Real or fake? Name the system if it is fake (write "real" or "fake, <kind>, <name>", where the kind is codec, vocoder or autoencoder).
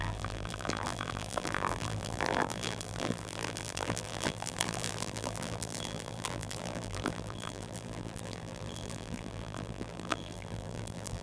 fake, vocoder, BigVGAN v2